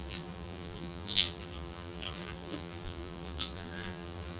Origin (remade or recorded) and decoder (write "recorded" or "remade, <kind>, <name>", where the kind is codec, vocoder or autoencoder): remade, vocoder, BigVGAN v2